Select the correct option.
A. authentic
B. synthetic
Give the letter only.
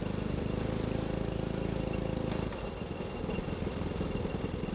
A